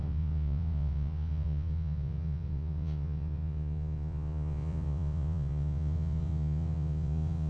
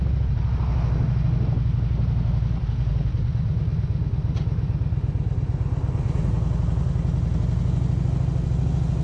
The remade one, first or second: first